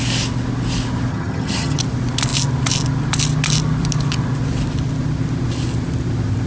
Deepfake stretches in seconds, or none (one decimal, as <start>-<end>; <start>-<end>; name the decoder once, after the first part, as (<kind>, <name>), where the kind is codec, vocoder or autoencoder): 1.1-1.8 (vocoder, HiFi-GAN)